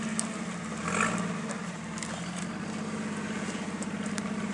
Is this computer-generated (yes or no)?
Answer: no